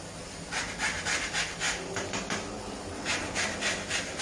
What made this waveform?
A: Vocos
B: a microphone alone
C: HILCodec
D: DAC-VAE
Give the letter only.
B